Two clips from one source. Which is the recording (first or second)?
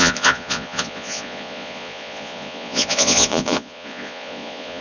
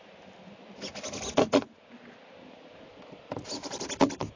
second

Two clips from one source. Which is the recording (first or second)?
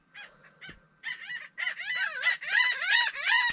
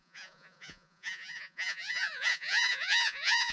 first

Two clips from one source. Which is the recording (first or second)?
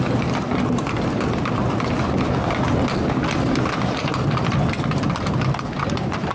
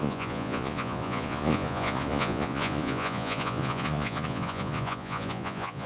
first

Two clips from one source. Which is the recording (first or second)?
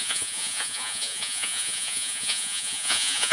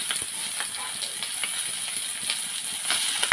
second